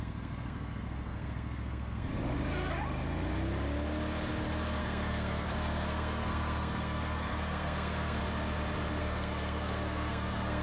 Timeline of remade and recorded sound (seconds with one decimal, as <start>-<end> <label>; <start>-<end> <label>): 0.0-2.1 remade; 2.1-4.8 recorded; 4.8-8.2 remade; 8.2-9.0 recorded; 9.0-10.6 remade